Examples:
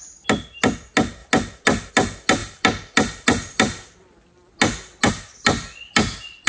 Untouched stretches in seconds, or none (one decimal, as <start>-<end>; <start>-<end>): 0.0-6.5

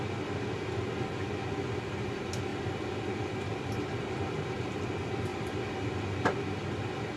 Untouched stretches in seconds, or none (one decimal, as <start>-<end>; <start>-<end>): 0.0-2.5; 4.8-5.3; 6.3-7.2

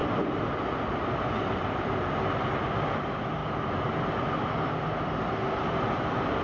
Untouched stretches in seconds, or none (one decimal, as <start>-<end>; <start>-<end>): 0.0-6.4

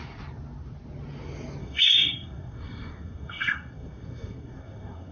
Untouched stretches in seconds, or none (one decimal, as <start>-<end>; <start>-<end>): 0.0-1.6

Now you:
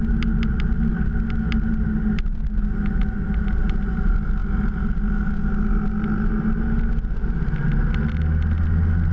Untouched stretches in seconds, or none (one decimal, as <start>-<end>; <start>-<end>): 0.0-9.1

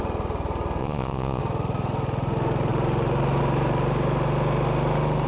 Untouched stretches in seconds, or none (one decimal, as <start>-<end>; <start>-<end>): 0.0-0.8; 1.4-5.3

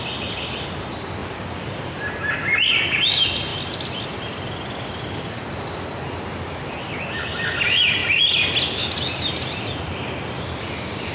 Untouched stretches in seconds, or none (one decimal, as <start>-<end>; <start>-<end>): 0.0-1.2; 2.1-8.0; 8.6-11.1

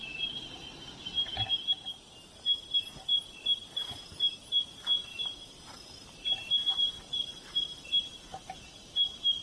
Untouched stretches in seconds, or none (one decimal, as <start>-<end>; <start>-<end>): 1.0-5.1; 8.6-9.4